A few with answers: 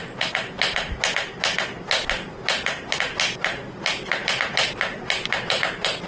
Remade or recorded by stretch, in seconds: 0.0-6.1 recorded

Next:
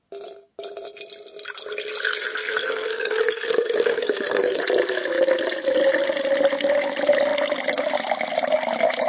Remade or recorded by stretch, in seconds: 0.0-2.1 recorded; 2.1-4.6 remade; 4.6-9.1 recorded